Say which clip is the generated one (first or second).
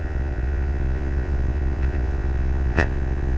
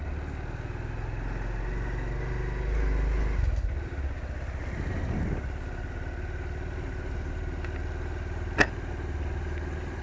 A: first